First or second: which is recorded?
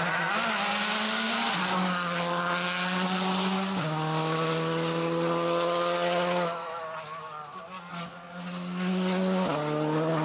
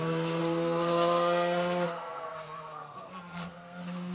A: first